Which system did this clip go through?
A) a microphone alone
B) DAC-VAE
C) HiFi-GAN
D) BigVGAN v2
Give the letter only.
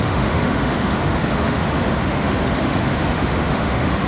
B